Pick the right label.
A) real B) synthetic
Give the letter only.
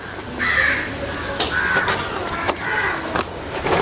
A